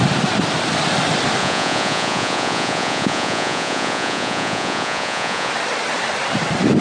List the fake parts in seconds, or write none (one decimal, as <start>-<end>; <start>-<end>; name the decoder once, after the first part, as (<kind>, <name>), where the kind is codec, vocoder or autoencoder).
1.4-5.5 (vocoder, Vocos)